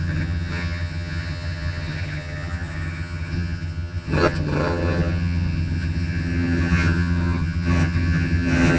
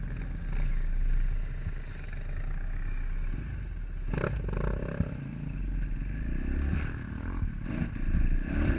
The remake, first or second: first